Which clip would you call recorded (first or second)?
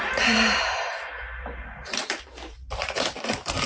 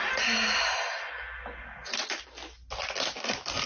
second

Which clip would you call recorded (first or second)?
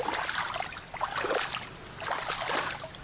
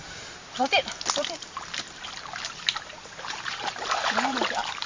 first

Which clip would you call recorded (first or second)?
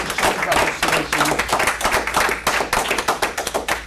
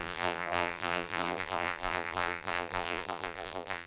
first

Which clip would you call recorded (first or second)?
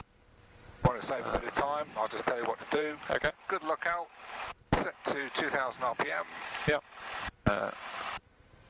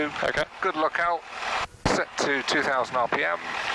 second